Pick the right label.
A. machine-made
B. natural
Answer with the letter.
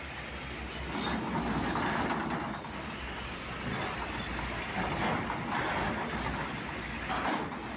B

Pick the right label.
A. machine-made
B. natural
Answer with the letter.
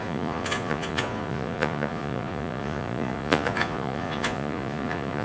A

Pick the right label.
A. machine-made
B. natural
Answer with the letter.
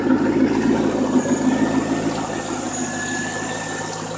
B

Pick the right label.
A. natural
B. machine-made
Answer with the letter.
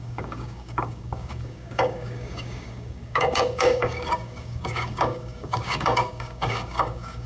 B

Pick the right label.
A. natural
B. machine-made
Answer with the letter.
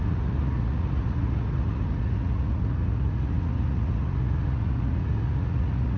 B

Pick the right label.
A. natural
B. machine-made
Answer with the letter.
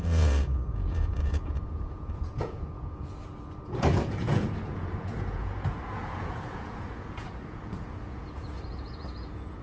B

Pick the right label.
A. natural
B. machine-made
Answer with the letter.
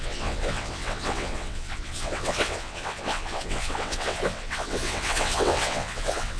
B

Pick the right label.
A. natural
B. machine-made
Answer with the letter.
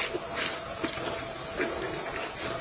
A